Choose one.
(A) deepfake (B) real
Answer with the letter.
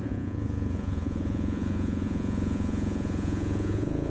A